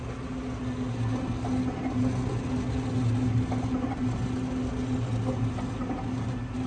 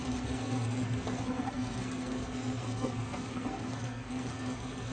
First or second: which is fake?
second